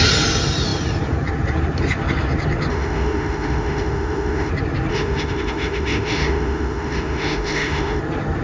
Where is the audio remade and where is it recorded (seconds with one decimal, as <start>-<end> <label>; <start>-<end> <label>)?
0.0-2.7 recorded; 2.7-4.5 remade; 4.5-4.9 recorded; 4.9-8.0 remade; 8.0-8.4 recorded